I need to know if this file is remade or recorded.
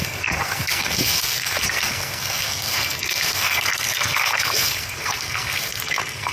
remade